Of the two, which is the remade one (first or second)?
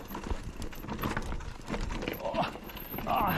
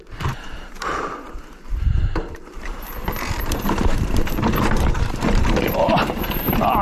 second